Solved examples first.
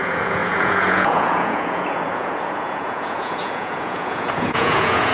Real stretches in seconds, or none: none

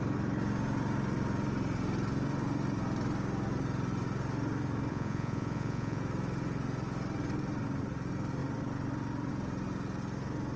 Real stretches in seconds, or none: 0.0-4.9; 6.0-10.6

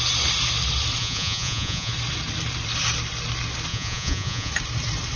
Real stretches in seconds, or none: 0.0-1.0; 1.9-3.7; 4.5-5.2

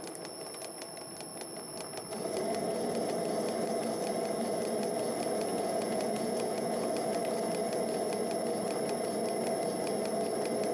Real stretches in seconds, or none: 0.0-5.5; 6.9-10.7

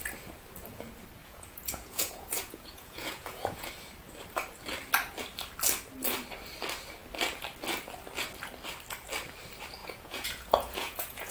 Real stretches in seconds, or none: 0.0-1.2; 3.7-9.8